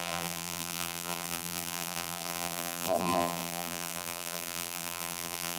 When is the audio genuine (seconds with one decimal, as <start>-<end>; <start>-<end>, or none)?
none